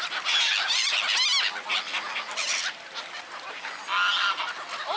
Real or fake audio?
real